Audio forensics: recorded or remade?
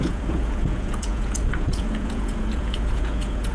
remade